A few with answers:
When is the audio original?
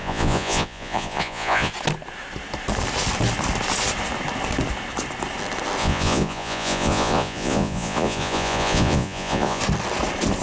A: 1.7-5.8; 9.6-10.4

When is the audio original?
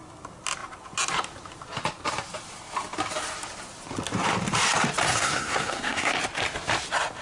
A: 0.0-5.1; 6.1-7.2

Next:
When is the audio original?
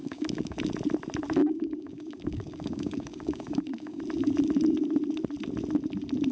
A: 0.6-1.4; 4.0-6.3